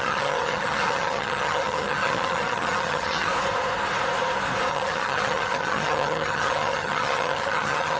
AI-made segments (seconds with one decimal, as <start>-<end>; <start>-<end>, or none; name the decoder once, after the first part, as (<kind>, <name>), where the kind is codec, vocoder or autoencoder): 0.0-3.3 (vocoder, HiFi-GAN); 4.7-8.0